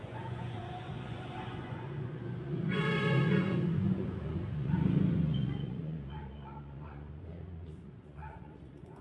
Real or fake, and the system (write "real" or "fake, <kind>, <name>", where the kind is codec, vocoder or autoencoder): fake, vocoder, Vocos